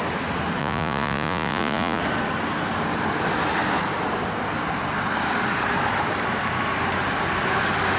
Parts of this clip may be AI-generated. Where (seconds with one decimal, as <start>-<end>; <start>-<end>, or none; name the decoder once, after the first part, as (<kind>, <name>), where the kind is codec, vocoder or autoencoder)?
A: 0.6-2.0 (vocoder, Vocos)